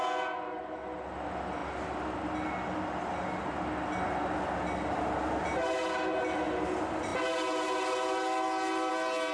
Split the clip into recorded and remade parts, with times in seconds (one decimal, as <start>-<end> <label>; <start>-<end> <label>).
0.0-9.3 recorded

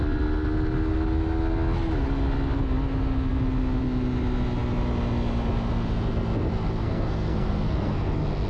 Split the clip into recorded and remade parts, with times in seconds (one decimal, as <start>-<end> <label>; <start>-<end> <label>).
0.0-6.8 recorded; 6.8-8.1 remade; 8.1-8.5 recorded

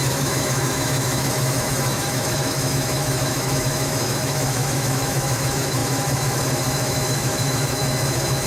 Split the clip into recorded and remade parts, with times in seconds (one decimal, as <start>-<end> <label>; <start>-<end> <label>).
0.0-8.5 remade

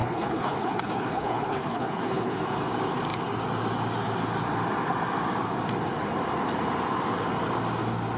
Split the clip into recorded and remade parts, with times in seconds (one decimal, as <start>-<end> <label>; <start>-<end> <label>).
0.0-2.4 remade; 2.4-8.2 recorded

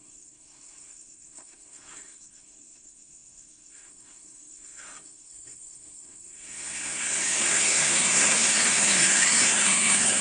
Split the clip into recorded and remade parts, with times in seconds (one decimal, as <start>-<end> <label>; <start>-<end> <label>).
0.0-10.2 remade